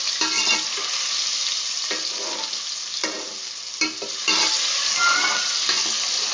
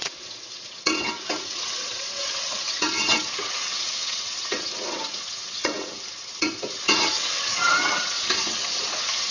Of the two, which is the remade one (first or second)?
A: second